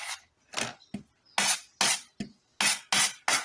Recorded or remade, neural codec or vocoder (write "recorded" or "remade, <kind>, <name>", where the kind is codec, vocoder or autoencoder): recorded